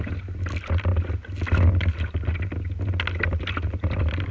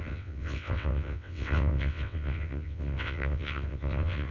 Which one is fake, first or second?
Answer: second